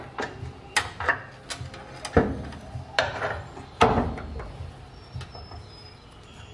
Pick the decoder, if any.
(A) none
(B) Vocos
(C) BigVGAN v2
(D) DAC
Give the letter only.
A